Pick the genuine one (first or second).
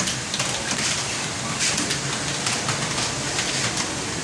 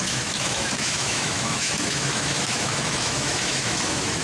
first